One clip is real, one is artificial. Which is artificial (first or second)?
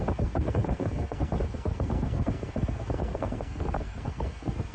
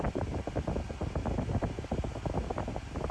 first